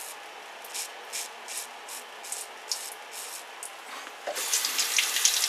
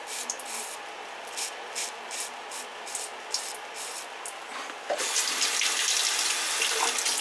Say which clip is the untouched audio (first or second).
first